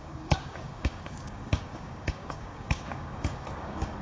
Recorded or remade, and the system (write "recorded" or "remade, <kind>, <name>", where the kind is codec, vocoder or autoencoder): remade, codec, DAC